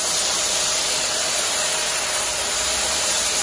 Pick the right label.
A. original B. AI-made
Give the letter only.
B